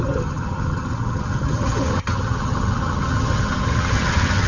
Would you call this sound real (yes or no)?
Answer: no